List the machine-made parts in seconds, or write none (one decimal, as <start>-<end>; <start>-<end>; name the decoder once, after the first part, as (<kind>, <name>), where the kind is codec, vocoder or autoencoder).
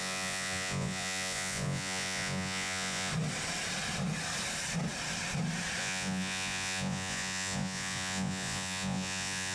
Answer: 0.0-3.1 (vocoder, Vocos); 5.8-9.5